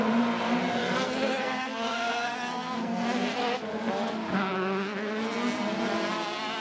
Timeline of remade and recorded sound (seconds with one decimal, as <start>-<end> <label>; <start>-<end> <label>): 0.0-0.8 recorded; 0.8-3.9 remade; 3.9-6.6 recorded